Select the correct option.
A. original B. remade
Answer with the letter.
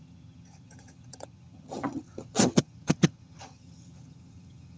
B